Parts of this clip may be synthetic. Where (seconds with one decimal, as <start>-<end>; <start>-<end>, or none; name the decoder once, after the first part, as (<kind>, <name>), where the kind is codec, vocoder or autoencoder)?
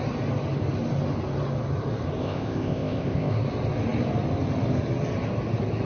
2.2-3.3 (codec, ZipCodec)